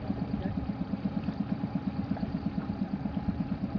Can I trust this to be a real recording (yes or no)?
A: yes